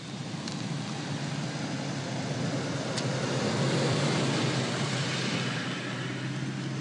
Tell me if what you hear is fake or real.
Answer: real